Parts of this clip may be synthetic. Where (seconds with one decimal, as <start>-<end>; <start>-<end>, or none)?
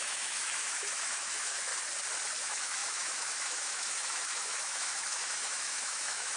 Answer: 0.0-1.7; 2.4-6.4